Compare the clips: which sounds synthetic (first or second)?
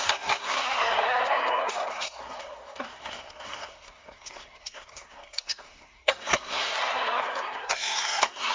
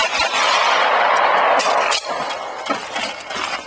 first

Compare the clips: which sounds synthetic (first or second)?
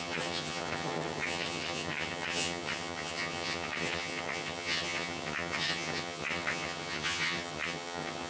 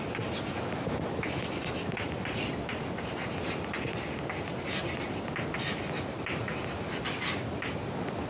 first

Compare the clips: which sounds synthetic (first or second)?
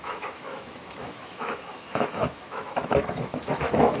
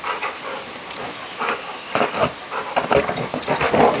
first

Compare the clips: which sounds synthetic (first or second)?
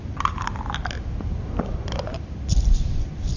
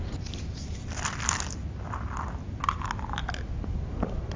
first